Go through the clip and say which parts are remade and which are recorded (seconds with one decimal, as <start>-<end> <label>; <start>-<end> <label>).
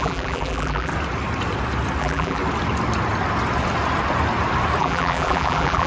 0.0-0.9 remade; 0.9-2.0 recorded; 2.0-2.4 remade; 2.4-4.8 recorded; 4.8-5.9 remade